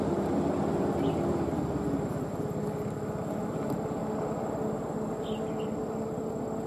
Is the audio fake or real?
real